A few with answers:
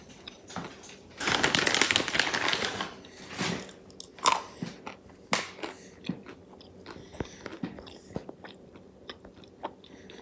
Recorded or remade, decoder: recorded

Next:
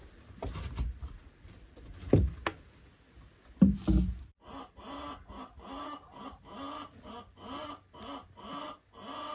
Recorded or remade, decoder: recorded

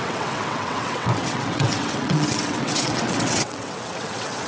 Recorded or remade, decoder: remade, vocoder, WaveNeXt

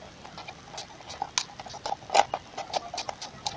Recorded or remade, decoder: recorded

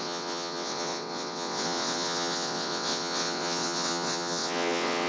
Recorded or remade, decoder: remade, vocoder, WaveNeXt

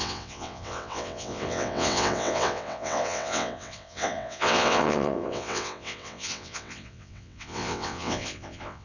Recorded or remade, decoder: remade, vocoder, WaveNeXt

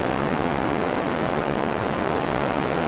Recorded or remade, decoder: remade, vocoder, WaveNeXt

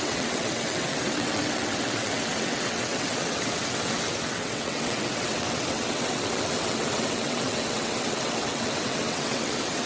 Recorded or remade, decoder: remade, vocoder, WaveNeXt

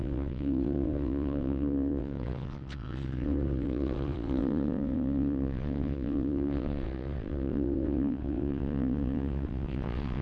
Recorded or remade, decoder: remade, vocoder, WaveNeXt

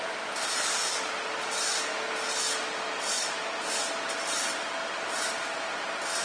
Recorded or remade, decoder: recorded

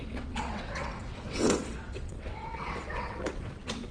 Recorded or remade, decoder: remade, vocoder, WaveNeXt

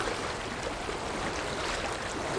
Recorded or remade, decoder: recorded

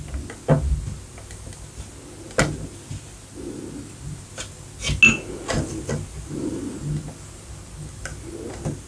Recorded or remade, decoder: recorded